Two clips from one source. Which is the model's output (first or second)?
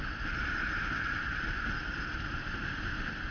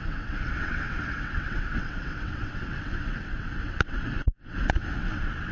second